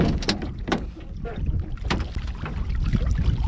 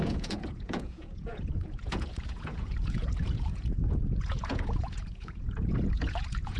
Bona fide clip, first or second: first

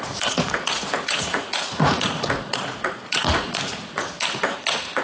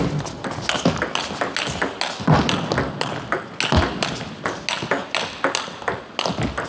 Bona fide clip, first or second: second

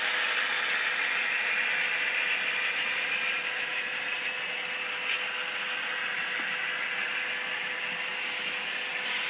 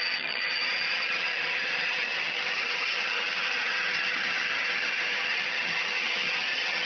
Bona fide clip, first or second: first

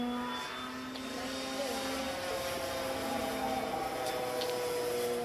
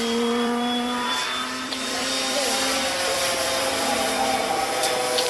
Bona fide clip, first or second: first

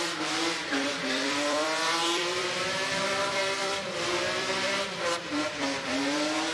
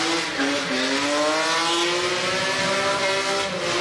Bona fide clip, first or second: second